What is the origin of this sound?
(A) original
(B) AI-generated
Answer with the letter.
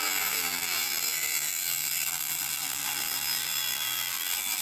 B